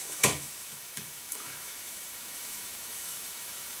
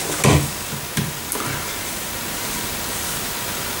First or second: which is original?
second